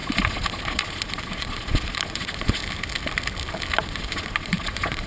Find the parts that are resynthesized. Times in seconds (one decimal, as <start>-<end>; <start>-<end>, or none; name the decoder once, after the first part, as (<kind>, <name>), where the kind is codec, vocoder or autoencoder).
0.0-2.6 (vocoder, Vocos); 3.8-5.1